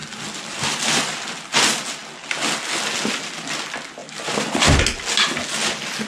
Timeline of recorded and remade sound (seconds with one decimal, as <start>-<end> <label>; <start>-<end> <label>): 0.0-6.1 recorded